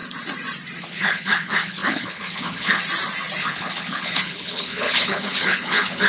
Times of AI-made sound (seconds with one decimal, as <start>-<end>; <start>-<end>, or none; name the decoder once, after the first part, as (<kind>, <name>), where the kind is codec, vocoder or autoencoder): 0.8-2.8 (codec, HILCodec); 3.4-6.1